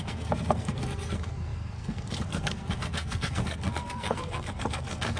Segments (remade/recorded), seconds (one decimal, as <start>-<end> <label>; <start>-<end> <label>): 0.0-5.2 remade